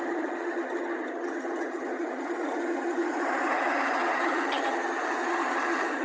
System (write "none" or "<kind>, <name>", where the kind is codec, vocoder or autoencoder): vocoder, HiFi-GAN